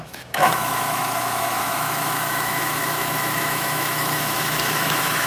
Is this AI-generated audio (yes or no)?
yes